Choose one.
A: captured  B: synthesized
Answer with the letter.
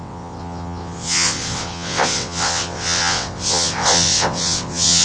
B